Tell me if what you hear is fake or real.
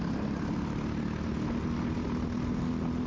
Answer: real